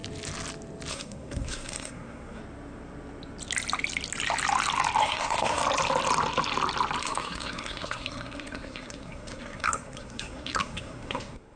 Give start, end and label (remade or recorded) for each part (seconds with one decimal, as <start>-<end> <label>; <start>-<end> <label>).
0.0-0.9 recorded; 0.9-2.4 remade; 2.4-5.0 recorded; 5.0-5.6 remade; 5.6-7.0 recorded; 7.0-11.6 remade